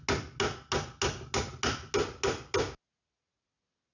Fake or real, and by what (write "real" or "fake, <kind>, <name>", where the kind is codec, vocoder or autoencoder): real